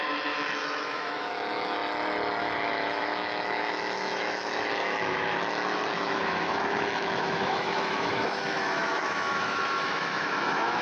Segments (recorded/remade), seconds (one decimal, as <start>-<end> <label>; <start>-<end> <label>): 0.0-1.8 remade; 1.8-2.4 recorded; 2.4-10.8 remade